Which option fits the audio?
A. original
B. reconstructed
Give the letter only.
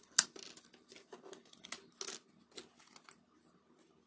A